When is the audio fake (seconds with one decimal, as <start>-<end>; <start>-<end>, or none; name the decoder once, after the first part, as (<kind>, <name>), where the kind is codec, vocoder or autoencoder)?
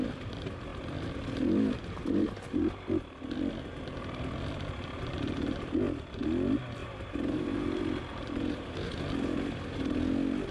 6.8-9.0 (vocoder, BigVGAN v2)